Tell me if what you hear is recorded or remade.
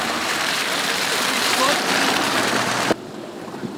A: remade